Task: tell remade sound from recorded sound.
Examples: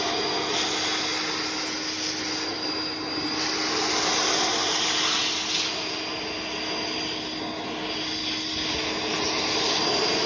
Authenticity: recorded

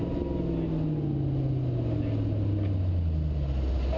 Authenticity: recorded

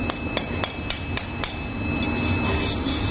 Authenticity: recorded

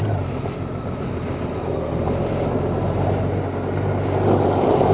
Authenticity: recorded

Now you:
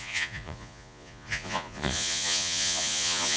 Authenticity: remade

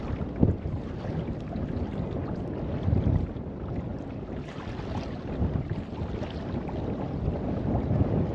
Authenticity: recorded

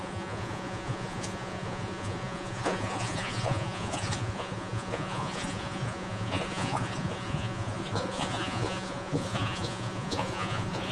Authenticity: remade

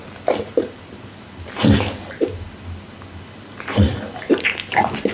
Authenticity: recorded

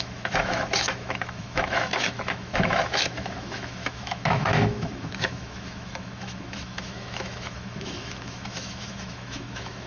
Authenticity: remade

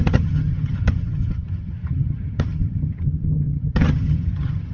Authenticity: remade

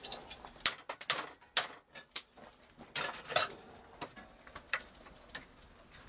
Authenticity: recorded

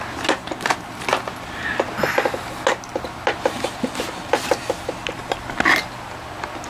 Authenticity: recorded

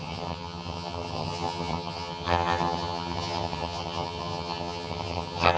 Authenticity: remade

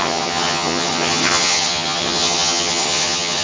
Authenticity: remade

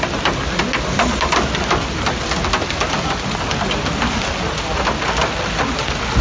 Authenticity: recorded